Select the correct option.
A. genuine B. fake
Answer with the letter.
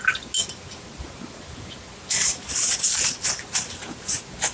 A